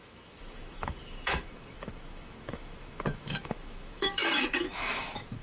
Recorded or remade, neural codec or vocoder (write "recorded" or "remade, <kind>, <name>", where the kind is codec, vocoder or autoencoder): remade, autoencoder, DAC-VAE